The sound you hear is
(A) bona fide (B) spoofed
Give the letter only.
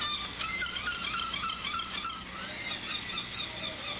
A